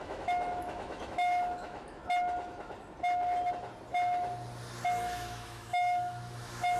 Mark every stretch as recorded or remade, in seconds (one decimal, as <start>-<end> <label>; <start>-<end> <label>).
0.0-2.0 remade; 2.0-5.0 recorded; 5.0-6.8 remade